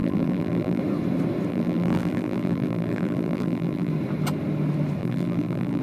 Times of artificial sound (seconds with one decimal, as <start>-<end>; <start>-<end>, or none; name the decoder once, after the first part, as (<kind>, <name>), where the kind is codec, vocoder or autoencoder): 0.0-0.8 (vocoder, BigVGAN v2); 1.5-3.9; 5.0-5.8